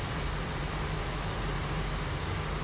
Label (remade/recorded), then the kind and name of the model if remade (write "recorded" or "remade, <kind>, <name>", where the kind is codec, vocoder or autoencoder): recorded